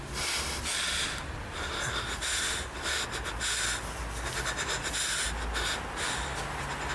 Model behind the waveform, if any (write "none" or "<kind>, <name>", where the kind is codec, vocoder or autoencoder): none